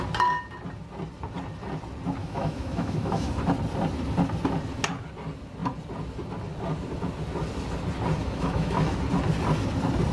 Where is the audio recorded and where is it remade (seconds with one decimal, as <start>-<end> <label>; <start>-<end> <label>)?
0.0-2.2 recorded; 2.2-3.3 remade; 3.3-8.2 recorded; 8.2-9.0 remade; 9.0-10.1 recorded